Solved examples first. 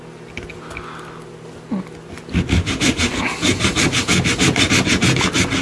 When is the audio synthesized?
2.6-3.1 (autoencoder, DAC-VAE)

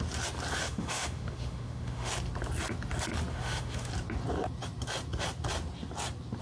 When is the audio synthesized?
0.6-2.1 (autoencoder, DAC-VAE); 3.3-3.9

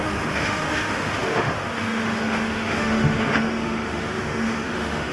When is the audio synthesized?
0.0-5.1 (autoencoder, DAC-VAE)

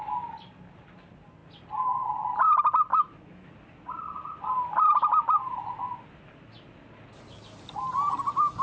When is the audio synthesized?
2.9-3.5 (autoencoder, DAC-VAE)

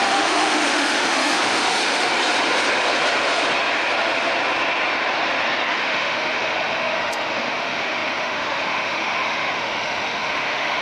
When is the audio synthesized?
0.0-2.1 (autoencoder, DAC-VAE); 5.7-10.8

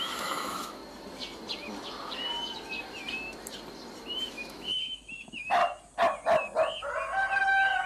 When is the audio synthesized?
0.0-0.8 (autoencoder, DAC-VAE); 4.3-5.6

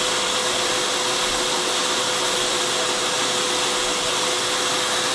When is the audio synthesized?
none

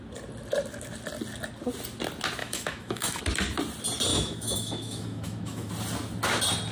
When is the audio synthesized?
2.4-3.2 (autoencoder, DAC-VAE); 4.1-5.7